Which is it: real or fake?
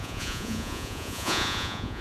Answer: fake